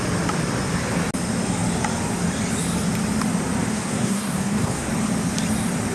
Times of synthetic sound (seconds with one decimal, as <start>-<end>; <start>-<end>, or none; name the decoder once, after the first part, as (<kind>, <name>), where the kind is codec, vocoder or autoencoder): 3.7-4.9 (codec, SNAC)